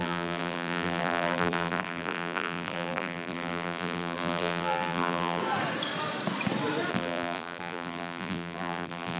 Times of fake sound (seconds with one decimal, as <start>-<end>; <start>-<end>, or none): 0.0-5.4; 6.9-9.2